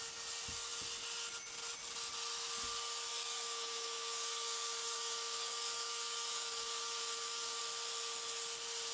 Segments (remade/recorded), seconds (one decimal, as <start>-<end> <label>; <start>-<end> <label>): 0.0-3.1 recorded; 3.1-7.6 remade; 7.6-8.9 recorded